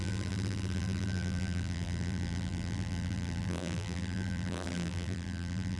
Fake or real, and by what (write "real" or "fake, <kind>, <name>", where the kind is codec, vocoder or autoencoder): fake, vocoder, BigVGAN v2